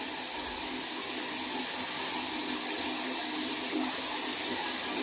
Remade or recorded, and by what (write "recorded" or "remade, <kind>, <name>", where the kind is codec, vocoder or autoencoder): recorded